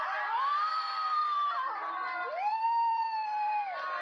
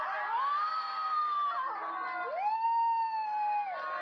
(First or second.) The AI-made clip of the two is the first